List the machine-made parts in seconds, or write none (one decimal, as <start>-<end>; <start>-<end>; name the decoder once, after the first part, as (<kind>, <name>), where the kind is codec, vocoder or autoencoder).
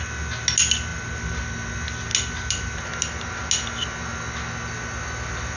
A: none